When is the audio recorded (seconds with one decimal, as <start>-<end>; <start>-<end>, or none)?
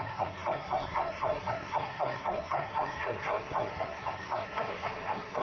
none